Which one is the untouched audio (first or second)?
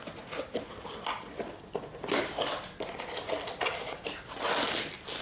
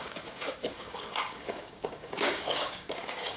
first